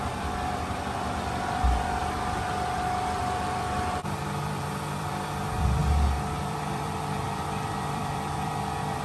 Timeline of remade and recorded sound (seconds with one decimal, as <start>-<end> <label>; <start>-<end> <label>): 0.0-5.8 remade; 5.8-6.3 recorded; 6.3-9.0 remade